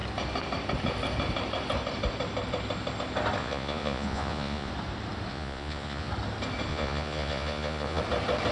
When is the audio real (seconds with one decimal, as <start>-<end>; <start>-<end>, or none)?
0.0-3.4; 4.7-5.3; 6.1-6.7; 8.0-8.5